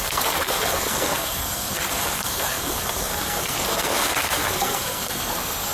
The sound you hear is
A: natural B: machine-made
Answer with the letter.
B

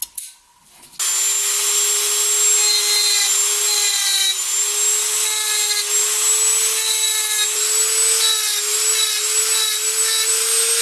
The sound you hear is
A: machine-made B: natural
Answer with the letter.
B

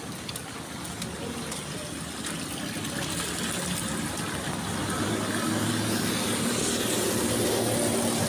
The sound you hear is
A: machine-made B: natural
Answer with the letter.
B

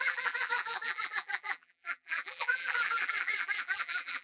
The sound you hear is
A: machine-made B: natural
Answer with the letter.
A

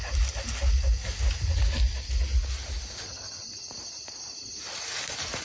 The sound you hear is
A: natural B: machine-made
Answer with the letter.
A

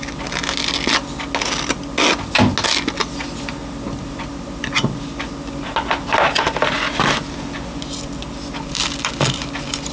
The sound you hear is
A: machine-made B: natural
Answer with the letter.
B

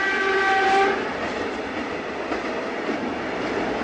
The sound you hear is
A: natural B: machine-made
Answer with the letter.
A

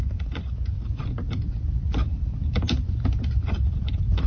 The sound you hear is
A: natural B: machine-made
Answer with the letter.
A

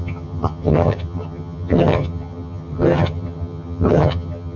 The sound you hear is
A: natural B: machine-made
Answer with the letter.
B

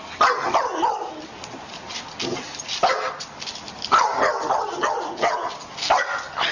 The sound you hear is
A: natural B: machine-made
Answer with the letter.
A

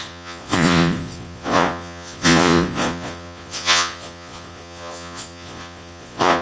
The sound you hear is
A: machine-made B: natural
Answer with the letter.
A